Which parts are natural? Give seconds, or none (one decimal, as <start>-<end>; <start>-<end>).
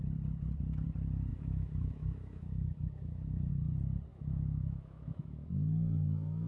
0.0-1.3; 3.5-4.1